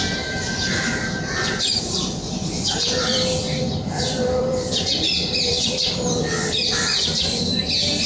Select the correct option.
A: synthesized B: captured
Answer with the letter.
A